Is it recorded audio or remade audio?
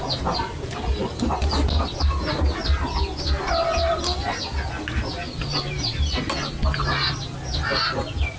recorded